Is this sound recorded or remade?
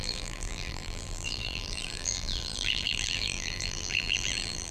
remade